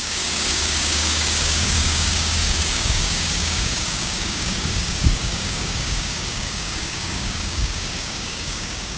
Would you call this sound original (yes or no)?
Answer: no